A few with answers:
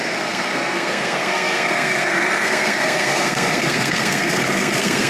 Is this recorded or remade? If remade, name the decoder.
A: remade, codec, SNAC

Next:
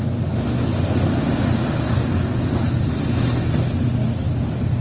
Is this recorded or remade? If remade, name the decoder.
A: recorded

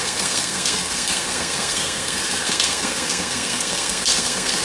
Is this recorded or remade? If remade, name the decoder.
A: remade, codec, SNAC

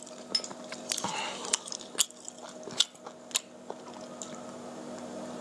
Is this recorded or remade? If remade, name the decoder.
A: recorded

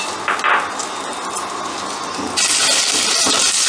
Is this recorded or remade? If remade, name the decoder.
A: recorded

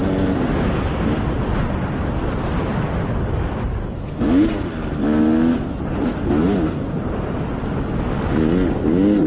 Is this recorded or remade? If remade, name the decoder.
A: recorded